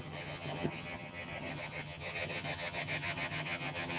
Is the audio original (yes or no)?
no